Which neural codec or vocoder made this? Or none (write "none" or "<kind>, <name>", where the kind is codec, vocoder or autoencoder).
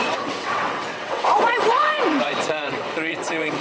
vocoder, WaveNeXt